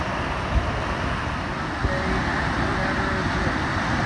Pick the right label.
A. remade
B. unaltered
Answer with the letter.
B